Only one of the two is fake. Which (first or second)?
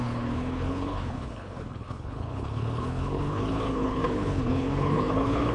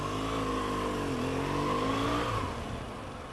first